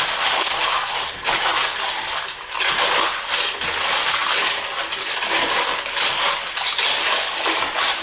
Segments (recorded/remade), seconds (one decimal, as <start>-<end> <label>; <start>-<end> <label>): 0.0-8.0 recorded